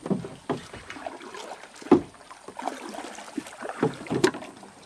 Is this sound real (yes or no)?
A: yes